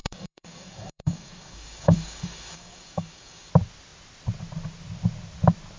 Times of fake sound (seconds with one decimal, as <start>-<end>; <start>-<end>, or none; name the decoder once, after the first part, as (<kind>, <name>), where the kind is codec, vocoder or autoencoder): 0.0-3.5 (codec, DAC)